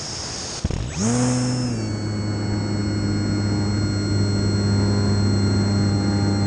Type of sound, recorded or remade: recorded